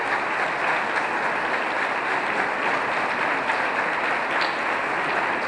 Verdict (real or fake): real